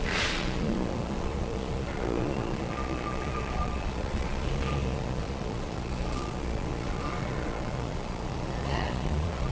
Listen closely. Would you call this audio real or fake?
fake